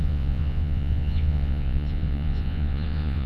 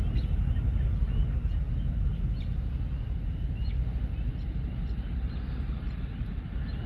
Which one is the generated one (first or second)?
first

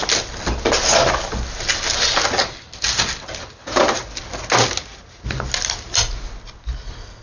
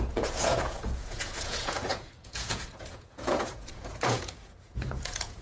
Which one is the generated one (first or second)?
second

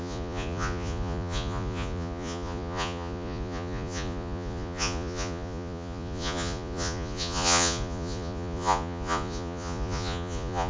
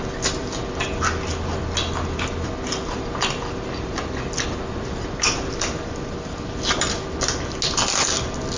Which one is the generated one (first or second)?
first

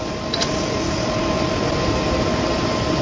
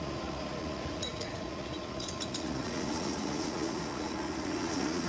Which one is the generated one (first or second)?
second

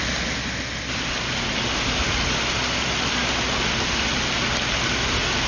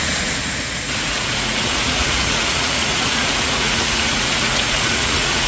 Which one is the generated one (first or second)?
second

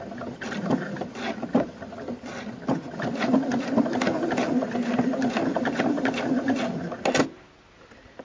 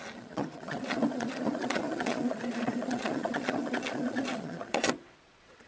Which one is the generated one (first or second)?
second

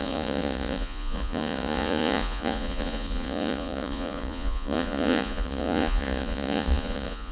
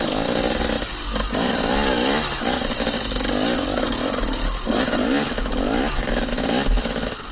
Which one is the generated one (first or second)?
first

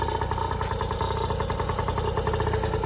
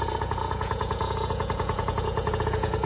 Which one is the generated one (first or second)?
second